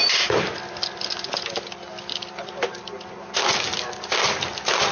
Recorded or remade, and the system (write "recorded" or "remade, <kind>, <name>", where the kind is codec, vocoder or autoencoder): recorded